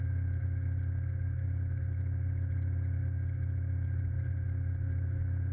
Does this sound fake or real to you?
real